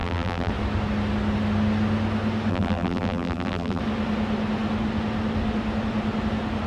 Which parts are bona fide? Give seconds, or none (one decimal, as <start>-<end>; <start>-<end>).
0.5-2.5; 3.8-6.7